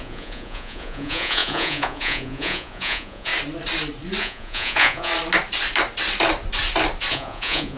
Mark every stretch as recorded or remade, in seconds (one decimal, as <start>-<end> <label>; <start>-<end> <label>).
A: 0.0-3.3 remade; 3.3-4.2 recorded; 4.2-5.1 remade; 5.1-7.1 recorded; 7.1-7.8 remade